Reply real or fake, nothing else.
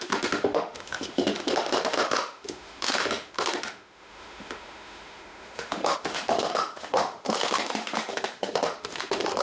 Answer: fake